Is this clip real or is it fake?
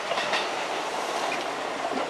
fake